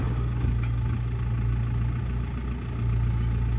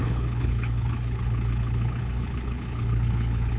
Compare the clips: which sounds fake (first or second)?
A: second